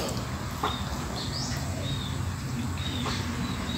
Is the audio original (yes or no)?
yes